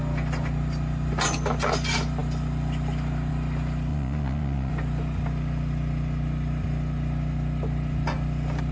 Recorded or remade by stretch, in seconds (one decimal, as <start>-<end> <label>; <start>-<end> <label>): 0.0-3.9 recorded; 3.9-4.7 remade; 4.7-8.7 recorded